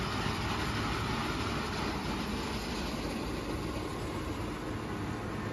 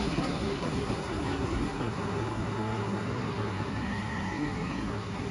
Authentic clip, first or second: first